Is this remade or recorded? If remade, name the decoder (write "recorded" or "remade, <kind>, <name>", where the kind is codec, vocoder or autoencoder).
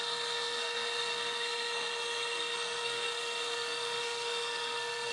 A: remade, codec, SNAC